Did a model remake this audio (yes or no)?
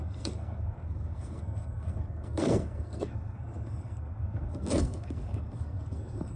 yes